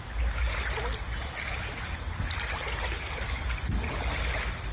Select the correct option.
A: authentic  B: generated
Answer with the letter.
A